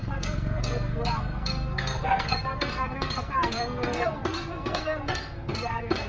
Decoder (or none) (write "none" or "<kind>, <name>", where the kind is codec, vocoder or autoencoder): codec, SNAC